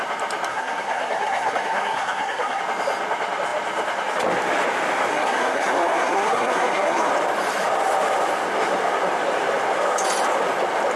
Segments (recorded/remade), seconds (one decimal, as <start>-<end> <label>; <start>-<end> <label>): 0.0-0.5 recorded; 0.5-2.6 remade; 2.6-5.1 recorded; 5.1-7.1 remade; 7.1-11.0 recorded